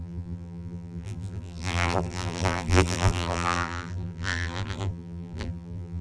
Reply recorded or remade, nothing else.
remade